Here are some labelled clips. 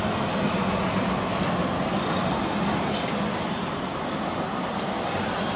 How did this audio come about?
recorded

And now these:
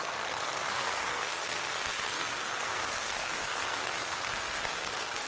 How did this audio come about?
remade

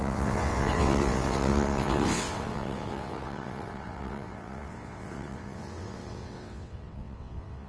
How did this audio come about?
remade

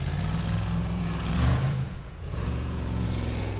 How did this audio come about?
remade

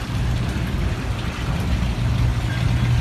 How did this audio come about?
recorded